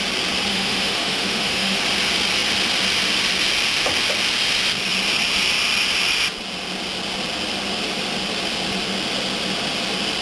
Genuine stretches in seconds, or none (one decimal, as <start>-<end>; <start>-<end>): 0.0-0.5; 1.8-10.2

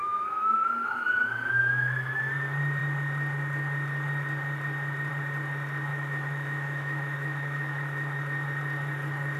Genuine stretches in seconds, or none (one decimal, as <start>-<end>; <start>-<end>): 2.2-5.9; 8.2-9.4

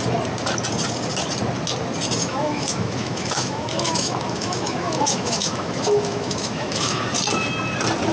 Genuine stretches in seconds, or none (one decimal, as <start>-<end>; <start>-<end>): 0.0-2.2; 7.0-8.1

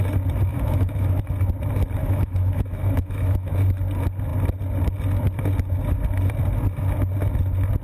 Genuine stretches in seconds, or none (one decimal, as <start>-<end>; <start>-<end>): 0.0-0.5; 1.2-2.0; 3.5-7.8

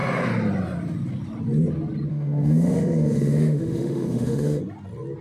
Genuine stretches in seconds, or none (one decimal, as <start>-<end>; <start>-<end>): 0.0-2.1; 4.6-5.2

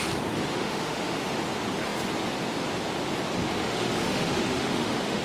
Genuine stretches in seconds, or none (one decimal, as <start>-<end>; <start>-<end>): 0.0-0.5; 1.4-3.6

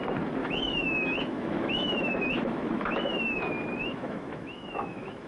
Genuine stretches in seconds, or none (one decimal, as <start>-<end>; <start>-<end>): 0.0-0.4; 3.4-3.8